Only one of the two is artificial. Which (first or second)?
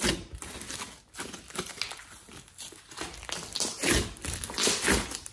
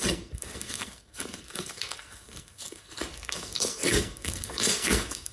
second